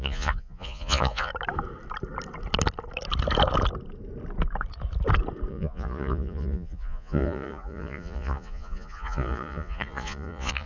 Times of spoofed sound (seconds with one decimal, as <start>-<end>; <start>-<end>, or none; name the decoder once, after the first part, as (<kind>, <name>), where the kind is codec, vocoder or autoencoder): 0.0-1.3 (vocoder, Vocos); 5.5-10.7